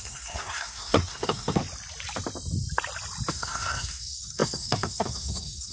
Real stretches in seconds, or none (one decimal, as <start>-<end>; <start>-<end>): 1.6-3.3